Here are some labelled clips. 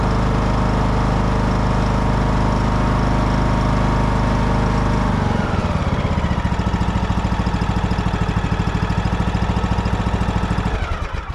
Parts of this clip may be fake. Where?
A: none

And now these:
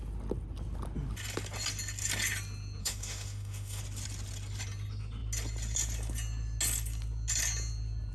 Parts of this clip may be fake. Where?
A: 2.8-3.8 (autoencoder, DAC-VAE)

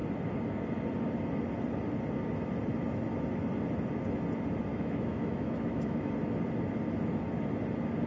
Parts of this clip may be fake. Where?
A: 4.7-6.1 (autoencoder, DAC-VAE)

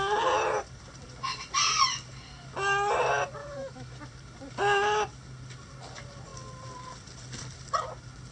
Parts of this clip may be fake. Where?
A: 3.4-4.0 (autoencoder, DAC-VAE)

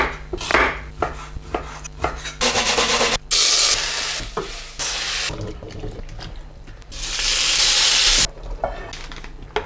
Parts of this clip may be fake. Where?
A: none